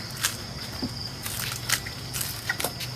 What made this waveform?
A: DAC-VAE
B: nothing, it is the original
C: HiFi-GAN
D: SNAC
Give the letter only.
B